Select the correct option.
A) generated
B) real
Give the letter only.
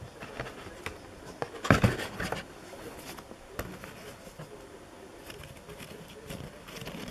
B